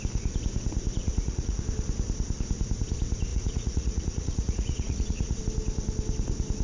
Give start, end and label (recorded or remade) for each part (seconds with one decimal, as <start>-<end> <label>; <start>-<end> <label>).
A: 0.0-1.0 recorded; 1.0-1.6 remade; 1.6-3.3 recorded; 3.3-5.4 remade; 5.4-6.6 recorded